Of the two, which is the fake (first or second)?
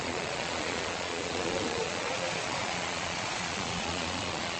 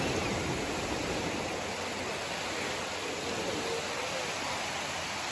first